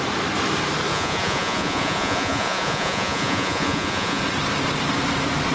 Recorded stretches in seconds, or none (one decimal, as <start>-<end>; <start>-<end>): 0.0-0.9; 4.2-5.5